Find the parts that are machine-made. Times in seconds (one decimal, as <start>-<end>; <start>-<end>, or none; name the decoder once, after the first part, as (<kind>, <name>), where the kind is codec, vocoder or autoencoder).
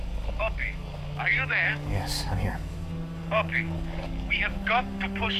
0.0-5.4 (codec, DAC)